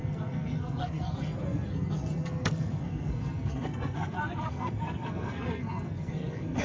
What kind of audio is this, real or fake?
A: fake